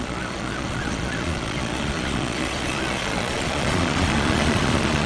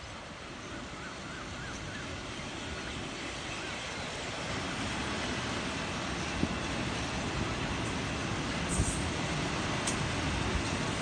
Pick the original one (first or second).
second